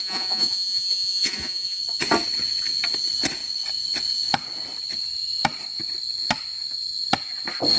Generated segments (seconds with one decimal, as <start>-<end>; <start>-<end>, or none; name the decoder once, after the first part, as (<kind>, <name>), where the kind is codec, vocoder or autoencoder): 0.0-1.8 (vocoder, Vocos)